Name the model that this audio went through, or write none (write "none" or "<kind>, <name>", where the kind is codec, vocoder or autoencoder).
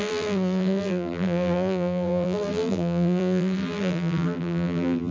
vocoder, BigVGAN v2